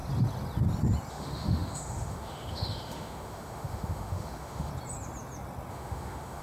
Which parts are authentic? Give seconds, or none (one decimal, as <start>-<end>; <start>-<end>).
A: 0.0-1.1; 4.7-5.7